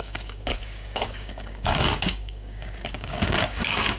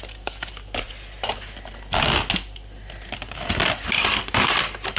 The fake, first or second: first